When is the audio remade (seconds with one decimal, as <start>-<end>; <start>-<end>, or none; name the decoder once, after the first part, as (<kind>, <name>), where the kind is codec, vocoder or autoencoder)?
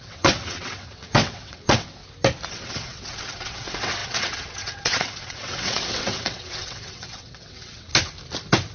0.0-2.0 (vocoder, WaveNeXt); 2.5-7.9